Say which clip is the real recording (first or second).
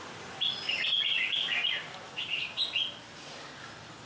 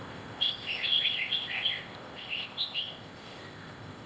first